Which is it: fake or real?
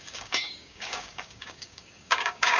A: fake